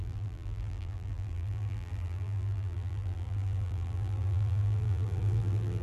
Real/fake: fake